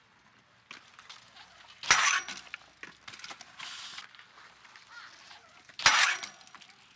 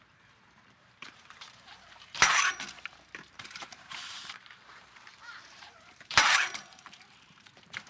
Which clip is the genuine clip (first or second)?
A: first